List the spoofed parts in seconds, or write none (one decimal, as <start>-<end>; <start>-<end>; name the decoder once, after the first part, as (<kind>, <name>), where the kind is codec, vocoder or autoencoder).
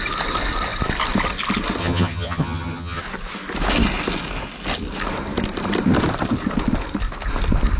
1.8-3.0 (vocoder, HiFi-GAN)